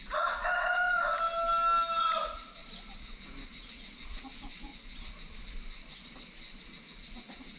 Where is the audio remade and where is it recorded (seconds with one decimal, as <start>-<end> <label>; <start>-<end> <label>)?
0.0-0.4 remade; 0.4-2.0 recorded; 2.0-2.6 remade; 2.6-3.7 recorded; 3.7-4.7 remade; 4.7-6.6 recorded; 6.6-7.6 remade